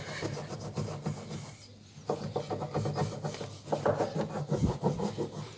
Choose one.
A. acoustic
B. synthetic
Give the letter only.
A